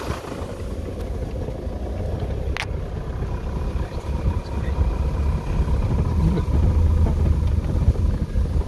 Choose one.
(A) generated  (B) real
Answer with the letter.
B